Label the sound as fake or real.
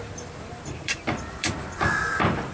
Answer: fake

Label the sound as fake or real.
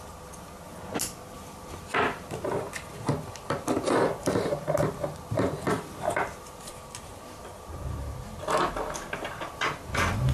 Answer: real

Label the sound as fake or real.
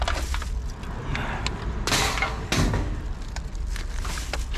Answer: real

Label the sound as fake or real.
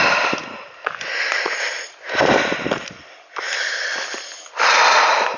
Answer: real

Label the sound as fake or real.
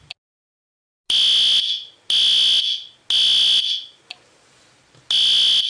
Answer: real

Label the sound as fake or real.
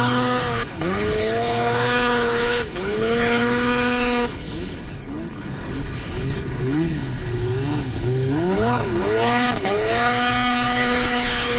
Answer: fake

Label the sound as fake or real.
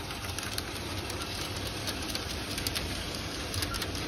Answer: fake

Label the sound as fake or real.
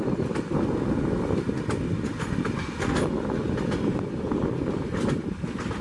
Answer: real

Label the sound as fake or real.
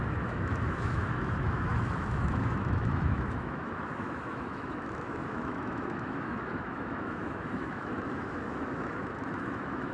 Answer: fake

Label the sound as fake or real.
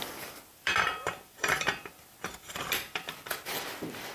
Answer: fake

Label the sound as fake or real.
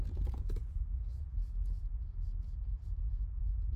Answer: fake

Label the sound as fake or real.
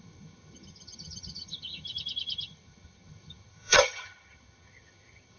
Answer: fake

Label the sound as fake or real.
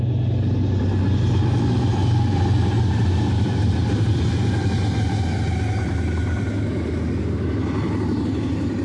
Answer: real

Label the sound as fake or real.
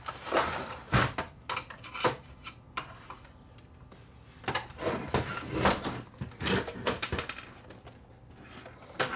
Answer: real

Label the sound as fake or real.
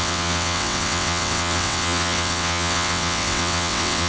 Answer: fake